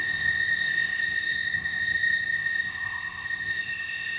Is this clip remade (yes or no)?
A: yes